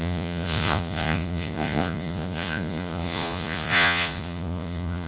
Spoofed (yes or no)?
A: yes